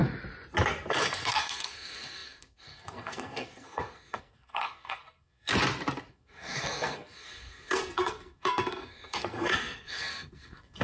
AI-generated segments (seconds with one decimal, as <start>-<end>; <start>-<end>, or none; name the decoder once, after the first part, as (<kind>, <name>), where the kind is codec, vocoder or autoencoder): 0.9-5.5 (codec, SNAC); 6.1-10.8